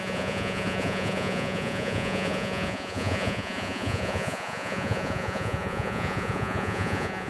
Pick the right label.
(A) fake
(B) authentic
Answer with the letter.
A